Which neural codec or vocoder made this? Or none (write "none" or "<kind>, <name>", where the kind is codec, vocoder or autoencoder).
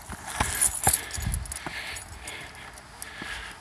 none